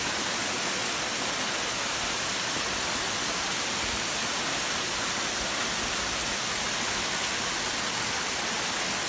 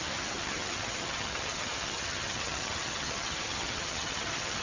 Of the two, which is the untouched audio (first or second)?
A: first